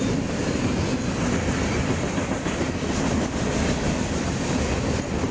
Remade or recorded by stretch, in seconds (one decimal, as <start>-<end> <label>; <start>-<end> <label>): 0.0-0.9 remade; 0.9-4.1 recorded; 4.1-5.3 remade